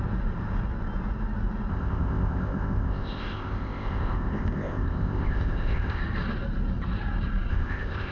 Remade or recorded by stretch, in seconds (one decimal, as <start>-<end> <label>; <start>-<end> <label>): 0.0-1.7 recorded; 1.7-6.0 remade; 6.0-7.5 recorded; 7.5-8.1 remade